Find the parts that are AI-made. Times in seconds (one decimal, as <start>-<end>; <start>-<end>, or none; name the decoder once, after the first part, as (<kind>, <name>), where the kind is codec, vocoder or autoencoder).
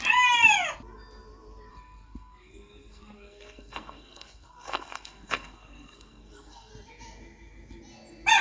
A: 1.7-6.7 (codec, SNAC)